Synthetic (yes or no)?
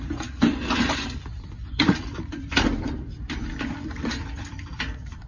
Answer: yes